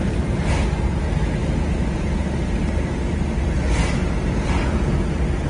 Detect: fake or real real